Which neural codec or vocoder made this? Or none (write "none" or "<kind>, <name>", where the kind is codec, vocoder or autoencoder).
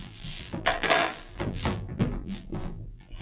vocoder, BigVGAN v2